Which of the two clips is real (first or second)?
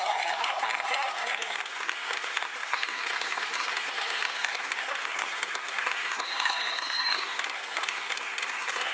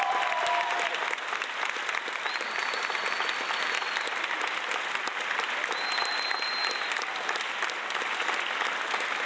second